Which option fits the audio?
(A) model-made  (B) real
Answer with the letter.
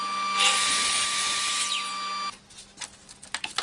B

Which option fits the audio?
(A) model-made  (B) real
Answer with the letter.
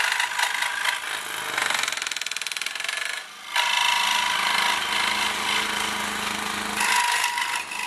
B